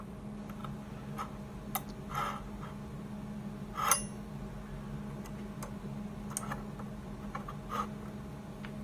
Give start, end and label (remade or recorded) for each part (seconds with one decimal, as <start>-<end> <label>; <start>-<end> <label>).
0.0-8.8 recorded